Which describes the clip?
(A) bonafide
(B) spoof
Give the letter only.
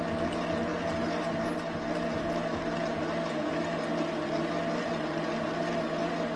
A